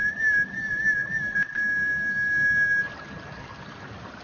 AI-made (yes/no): no